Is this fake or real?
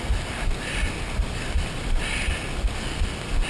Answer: real